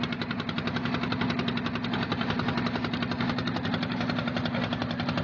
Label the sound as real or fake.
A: real